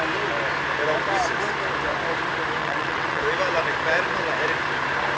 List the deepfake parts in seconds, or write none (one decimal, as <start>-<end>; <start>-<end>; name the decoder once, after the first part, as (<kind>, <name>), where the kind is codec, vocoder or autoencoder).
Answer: 2.6-3.2 (vocoder, WaveNeXt)